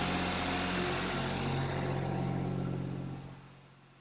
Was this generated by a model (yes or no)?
no